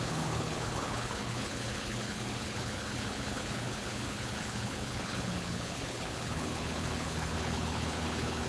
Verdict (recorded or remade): remade